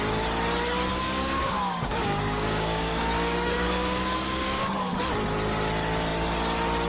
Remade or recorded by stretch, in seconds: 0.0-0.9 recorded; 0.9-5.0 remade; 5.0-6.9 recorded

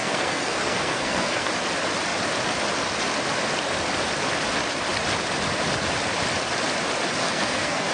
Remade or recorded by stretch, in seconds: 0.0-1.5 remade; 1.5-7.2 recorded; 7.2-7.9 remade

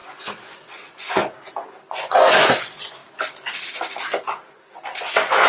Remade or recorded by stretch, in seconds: 0.0-1.2 remade; 1.2-1.9 recorded; 1.9-3.0 remade; 3.0-5.0 recorded; 5.0-5.5 remade

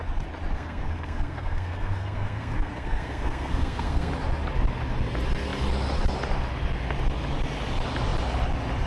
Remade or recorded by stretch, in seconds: 0.0-0.5 recorded; 0.5-4.1 remade; 4.1-8.9 recorded

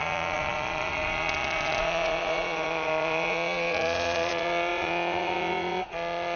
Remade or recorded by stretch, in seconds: 0.0-6.4 remade